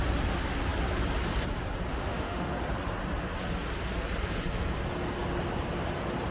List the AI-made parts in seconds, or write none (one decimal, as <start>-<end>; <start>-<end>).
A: 1.9-2.5